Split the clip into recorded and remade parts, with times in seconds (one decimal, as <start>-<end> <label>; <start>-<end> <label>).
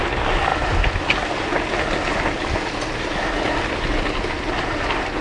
0.0-5.2 recorded